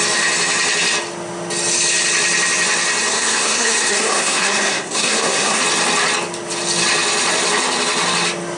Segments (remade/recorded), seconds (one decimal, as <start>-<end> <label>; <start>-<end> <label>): 0.0-3.1 recorded; 3.1-5.6 remade; 5.6-8.6 recorded

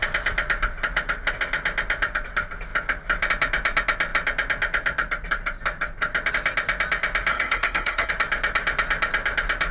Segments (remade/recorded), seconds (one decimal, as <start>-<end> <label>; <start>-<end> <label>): 0.0-7.3 recorded; 7.3-8.1 remade; 8.1-9.7 recorded

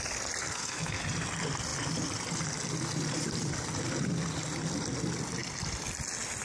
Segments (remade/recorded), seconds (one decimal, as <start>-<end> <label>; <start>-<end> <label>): 0.0-0.4 recorded; 0.4-1.0 remade; 1.0-6.4 recorded

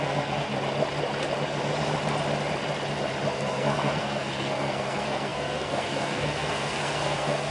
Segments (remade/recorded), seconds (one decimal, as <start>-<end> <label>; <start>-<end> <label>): 0.0-0.5 remade; 0.5-3.3 recorded; 3.3-7.5 remade

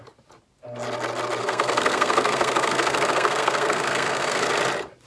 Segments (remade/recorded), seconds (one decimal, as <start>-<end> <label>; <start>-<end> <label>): 0.0-1.4 recorded; 1.4-4.5 remade; 4.5-5.1 recorded

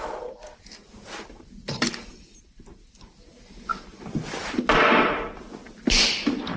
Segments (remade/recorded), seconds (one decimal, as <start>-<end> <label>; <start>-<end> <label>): 0.0-6.6 recorded

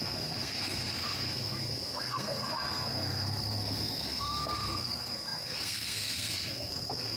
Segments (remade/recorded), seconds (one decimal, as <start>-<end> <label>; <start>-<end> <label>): 0.0-7.2 remade

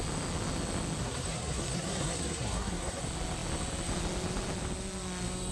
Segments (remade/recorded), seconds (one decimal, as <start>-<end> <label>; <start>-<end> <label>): 0.0-1.0 recorded; 1.0-3.0 remade; 3.0-5.5 recorded